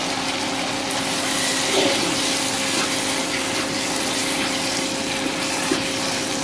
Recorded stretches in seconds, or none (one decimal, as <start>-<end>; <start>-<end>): 0.0-1.5; 2.3-4.2; 6.0-6.4